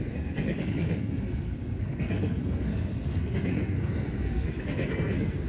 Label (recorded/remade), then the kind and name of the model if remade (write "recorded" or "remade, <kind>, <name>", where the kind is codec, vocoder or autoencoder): remade, codec, SNAC